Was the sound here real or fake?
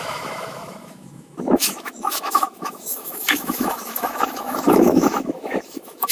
fake